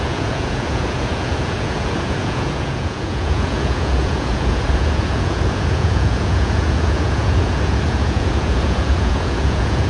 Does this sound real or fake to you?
fake